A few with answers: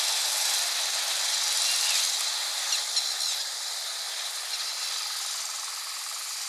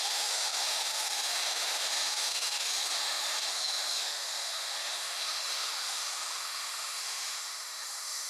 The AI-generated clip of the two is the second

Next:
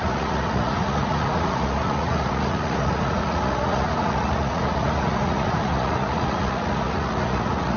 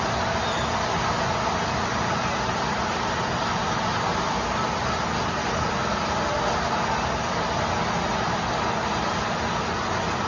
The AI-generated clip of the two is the first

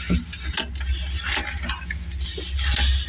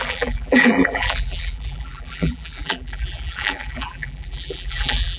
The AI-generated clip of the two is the second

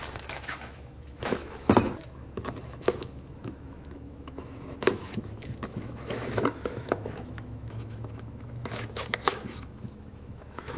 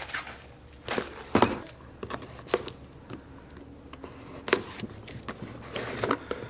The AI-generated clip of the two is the first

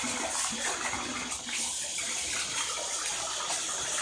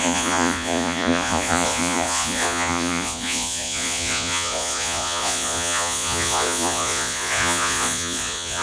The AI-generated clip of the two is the second